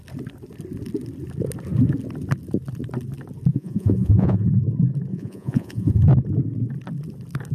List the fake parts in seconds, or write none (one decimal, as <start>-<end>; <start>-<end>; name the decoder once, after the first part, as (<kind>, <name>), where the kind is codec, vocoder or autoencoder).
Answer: 3.5-4.6 (vocoder, Vocos); 5.1-5.9